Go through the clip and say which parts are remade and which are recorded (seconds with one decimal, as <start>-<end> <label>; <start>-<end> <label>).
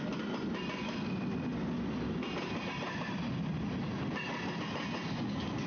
0.0-5.7 recorded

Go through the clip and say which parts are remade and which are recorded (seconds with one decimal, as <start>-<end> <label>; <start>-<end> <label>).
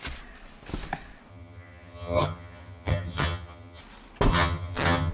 0.0-1.3 recorded; 1.3-3.8 remade; 3.8-4.3 recorded; 4.3-5.1 remade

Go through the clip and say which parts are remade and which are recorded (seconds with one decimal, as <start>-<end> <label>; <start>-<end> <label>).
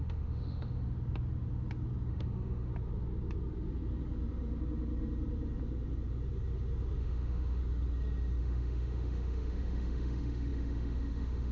0.0-0.8 remade; 0.8-2.1 recorded; 2.1-2.7 remade; 2.7-7.0 recorded; 7.0-7.6 remade; 7.6-8.4 recorded; 8.4-11.5 remade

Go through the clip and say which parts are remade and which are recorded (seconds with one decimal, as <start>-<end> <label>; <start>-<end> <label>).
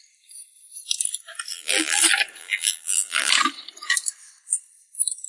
0.0-1.5 recorded; 1.5-2.0 remade; 2.0-2.4 recorded; 2.4-3.3 remade; 3.3-5.3 recorded